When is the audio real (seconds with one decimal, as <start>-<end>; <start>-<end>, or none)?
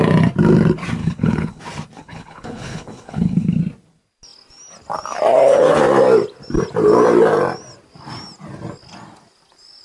0.0-1.0; 1.6-2.0; 3.6-9.8